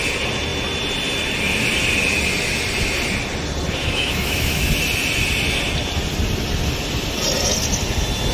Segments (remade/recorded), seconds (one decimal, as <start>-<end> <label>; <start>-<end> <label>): 0.0-3.8 recorded; 3.8-4.7 remade; 4.7-8.3 recorded